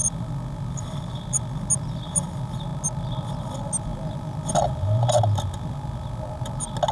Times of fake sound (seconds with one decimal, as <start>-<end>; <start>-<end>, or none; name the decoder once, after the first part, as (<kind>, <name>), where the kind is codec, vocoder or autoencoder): none